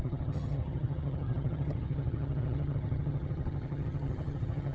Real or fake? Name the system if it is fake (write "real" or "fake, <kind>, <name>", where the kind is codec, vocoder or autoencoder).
fake, vocoder, HiFi-GAN